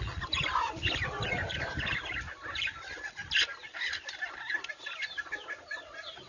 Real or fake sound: real